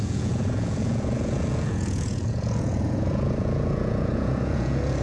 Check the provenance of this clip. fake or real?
fake